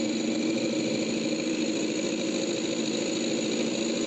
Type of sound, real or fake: real